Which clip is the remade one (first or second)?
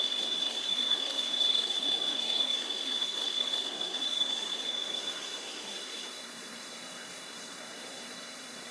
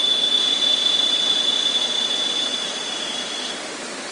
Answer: first